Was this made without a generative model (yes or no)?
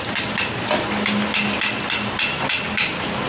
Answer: yes